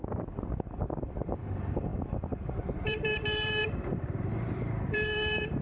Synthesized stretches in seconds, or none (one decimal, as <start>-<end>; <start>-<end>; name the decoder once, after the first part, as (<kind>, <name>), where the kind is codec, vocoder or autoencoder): 0.0-5.6 (vocoder, BigVGAN v2)